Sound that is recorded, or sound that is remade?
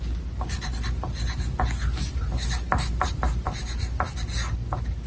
recorded